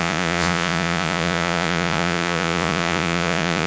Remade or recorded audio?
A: remade